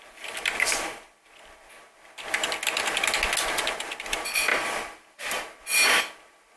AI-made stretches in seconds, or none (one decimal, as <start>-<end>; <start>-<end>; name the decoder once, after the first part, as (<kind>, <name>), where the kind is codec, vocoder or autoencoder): none

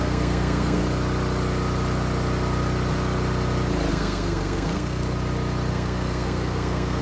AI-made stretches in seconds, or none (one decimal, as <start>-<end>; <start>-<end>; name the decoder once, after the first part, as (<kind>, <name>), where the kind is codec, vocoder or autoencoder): 0.0-0.8 (codec, SNAC); 3.9-5.0; 5.7-7.0

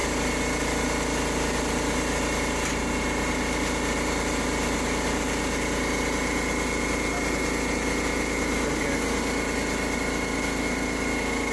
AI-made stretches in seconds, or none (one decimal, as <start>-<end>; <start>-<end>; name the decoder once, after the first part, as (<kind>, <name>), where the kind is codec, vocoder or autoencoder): none

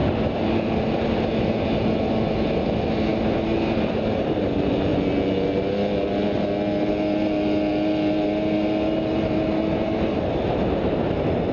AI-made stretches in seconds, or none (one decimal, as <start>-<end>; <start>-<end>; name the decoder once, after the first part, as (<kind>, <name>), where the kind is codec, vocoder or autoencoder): none

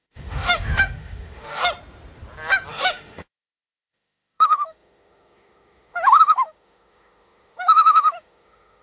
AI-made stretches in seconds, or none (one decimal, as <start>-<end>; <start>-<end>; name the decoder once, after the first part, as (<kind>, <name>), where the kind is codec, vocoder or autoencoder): 0.0-1.6 (autoencoder, DAC-VAE); 2.7-8.8

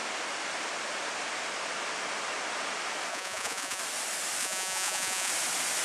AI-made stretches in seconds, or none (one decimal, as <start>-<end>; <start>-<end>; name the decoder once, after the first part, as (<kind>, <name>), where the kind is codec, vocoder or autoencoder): 3.1-3.8 (vocoder, Vocos); 4.4-5.3